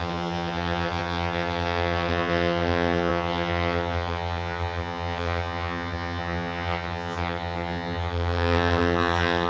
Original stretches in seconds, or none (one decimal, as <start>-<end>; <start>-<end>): none